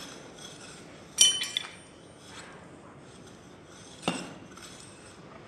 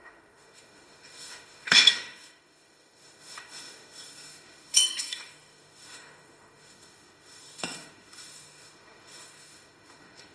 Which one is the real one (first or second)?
first